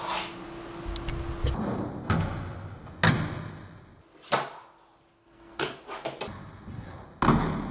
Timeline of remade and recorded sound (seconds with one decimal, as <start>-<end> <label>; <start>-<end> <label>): 0.0-5.2 recorded; 5.2-5.8 remade; 5.8-7.7 recorded